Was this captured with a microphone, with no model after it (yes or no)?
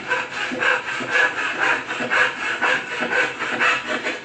yes